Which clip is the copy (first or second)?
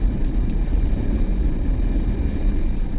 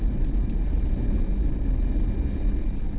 first